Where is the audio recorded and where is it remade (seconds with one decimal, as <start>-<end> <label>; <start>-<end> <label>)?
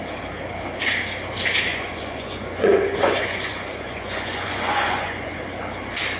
0.0-1.7 recorded; 1.7-5.4 remade; 5.4-6.2 recorded